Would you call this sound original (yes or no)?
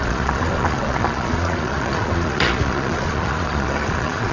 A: no